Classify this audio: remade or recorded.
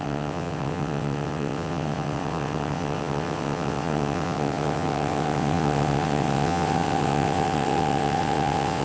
remade